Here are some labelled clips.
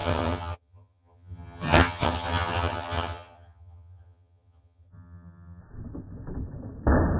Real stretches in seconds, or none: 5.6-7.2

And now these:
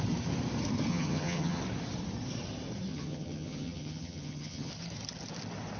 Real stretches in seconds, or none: 0.0-0.9; 1.6-2.9; 4.7-5.8

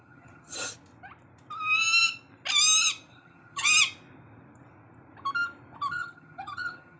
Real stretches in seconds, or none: 0.7-3.1; 3.6-5.9

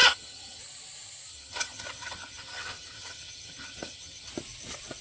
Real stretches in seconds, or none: 0.6-1.3; 4.3-5.0

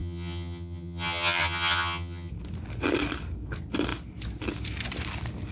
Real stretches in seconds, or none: 2.3-5.5

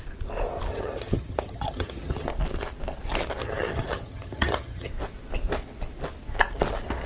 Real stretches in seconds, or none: 0.0-0.7; 2.3-3.4; 4.9-7.1

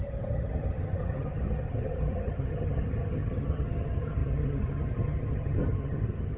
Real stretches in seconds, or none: none